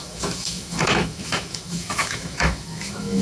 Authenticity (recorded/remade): remade